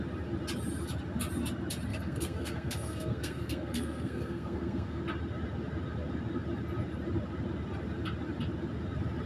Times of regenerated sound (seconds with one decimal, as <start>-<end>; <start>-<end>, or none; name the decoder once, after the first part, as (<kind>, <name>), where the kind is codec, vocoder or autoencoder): 1.9-5.0 (codec, SNAC)